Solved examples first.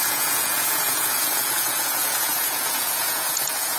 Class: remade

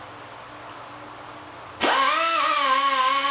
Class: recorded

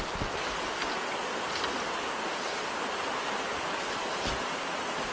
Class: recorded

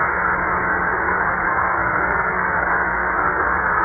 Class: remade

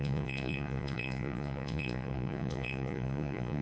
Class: remade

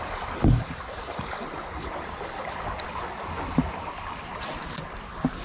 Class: recorded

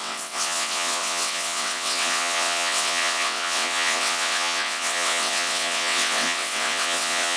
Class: remade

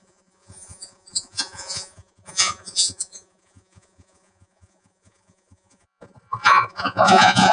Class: remade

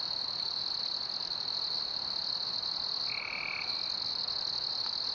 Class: recorded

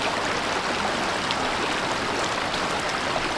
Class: recorded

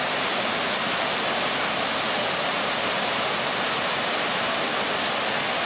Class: recorded